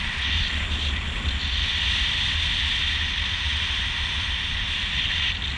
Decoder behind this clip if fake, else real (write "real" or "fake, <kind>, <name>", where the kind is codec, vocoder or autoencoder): real